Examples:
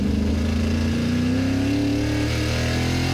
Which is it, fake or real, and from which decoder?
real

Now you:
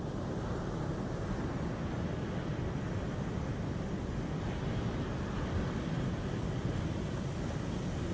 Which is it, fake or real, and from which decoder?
real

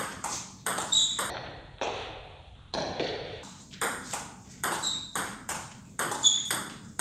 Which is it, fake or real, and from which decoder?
fake, vocoder, BigVGAN v2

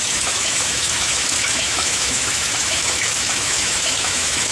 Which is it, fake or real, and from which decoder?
fake, autoencoder, DAC-VAE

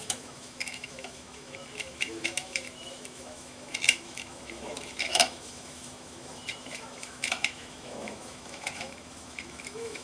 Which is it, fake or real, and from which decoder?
fake, autoencoder, DAC-VAE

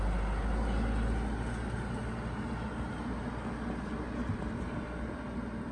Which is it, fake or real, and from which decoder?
real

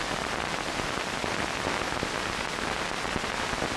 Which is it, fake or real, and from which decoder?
real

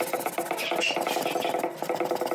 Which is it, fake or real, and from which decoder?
real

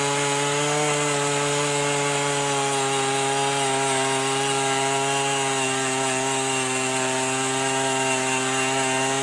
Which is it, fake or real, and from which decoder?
real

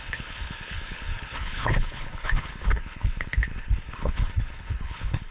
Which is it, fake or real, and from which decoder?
fake, codec, HILCodec